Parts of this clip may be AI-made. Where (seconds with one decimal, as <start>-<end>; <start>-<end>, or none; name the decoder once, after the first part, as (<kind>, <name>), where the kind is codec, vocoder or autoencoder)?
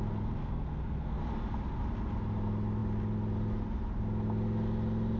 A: 0.4-1.2 (codec, SNAC)